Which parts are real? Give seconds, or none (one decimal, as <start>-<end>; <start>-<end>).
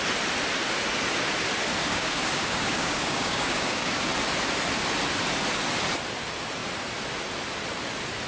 0.0-1.9; 4.0-8.3